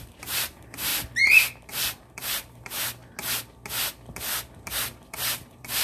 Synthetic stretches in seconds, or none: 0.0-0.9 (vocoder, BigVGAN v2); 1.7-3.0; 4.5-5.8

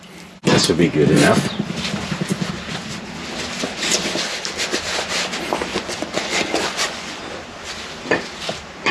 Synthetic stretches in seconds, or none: 5.7-7.2 (vocoder, Vocos)